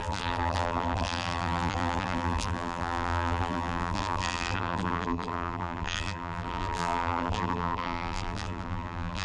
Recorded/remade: remade